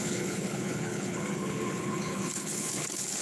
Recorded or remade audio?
remade